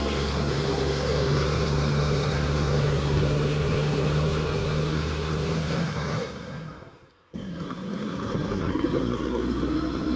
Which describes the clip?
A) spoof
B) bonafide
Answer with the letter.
A